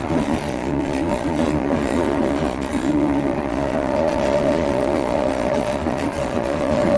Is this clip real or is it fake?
fake